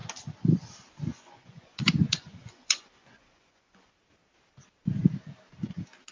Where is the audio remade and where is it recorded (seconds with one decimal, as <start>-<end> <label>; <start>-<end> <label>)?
0.0-1.1 recorded; 1.1-3.9 remade; 3.9-6.1 recorded